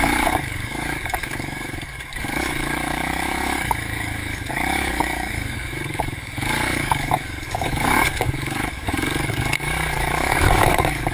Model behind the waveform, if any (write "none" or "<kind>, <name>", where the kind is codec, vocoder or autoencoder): codec, DAC